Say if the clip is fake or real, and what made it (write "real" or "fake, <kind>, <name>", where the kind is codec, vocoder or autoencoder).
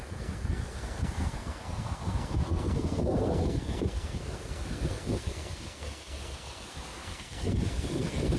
fake, codec, SNAC